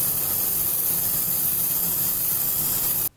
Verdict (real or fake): real